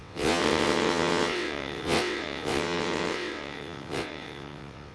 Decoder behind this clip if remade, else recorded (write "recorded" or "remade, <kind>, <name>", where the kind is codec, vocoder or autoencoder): remade, vocoder, WaveNeXt